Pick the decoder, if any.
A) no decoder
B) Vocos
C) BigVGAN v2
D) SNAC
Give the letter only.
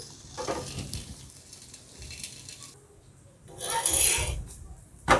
A